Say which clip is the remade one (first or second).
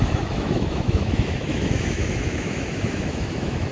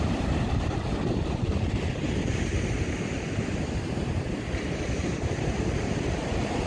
first